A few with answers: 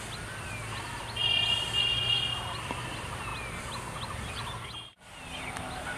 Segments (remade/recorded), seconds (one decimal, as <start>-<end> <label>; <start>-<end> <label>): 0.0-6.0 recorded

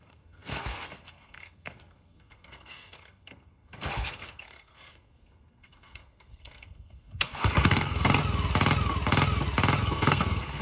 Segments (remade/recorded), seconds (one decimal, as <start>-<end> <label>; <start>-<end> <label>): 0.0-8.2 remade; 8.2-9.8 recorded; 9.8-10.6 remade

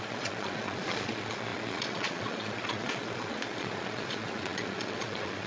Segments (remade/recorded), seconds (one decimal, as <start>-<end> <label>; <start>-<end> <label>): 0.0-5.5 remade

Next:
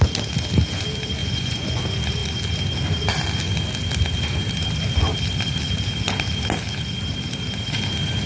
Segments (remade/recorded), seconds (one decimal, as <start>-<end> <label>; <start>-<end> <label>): 0.0-1.2 recorded; 1.2-1.8 remade; 1.8-8.3 recorded

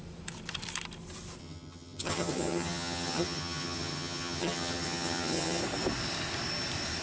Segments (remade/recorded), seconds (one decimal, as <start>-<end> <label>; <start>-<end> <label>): 0.0-1.4 recorded; 1.4-5.6 remade; 5.6-7.0 recorded

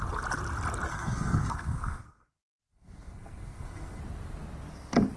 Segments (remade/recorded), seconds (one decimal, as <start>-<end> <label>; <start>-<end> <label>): 0.0-0.9 recorded; 0.9-4.0 remade; 4.0-5.2 recorded